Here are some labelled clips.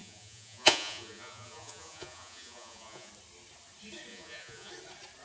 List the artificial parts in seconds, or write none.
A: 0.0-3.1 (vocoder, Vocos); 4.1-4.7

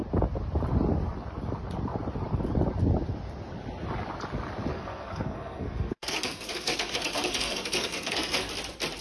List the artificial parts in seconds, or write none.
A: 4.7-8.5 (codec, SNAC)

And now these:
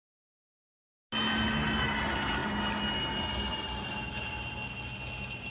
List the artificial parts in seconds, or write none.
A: none

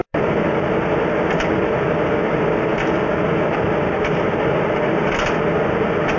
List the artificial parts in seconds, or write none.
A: 0.0-0.5 (vocoder, BigVGAN v2)

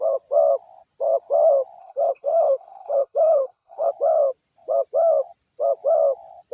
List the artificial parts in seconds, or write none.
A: 1.8-3.9 (codec, HILCodec)

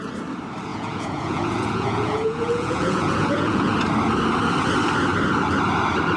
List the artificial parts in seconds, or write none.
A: 0.7-3.7 (vocoder, Vocos)

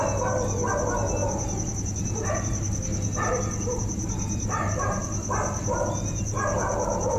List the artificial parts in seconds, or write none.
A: none

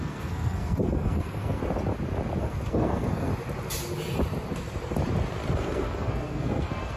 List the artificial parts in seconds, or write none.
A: 0.0-1.6 (codec, SNAC); 2.4-3.3; 5.6-7.0